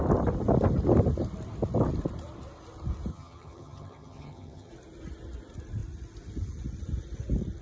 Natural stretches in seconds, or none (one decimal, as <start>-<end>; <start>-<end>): 0.0-3.1; 4.7-7.6